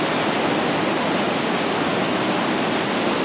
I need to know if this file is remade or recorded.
recorded